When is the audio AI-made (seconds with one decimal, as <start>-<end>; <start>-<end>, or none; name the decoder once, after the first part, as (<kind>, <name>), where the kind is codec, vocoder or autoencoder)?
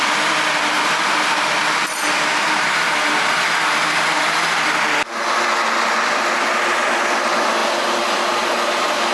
none